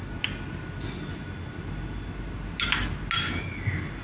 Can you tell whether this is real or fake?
real